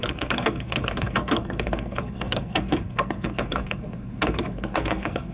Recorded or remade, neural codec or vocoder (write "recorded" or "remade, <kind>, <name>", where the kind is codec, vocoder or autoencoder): remade, codec, SNAC